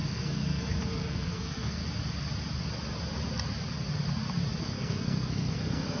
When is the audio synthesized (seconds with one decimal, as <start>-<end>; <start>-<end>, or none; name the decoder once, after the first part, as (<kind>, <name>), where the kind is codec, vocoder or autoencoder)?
0.0-1.8 (codec, SNAC); 4.6-6.0